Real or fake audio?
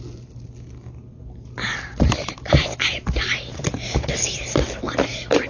real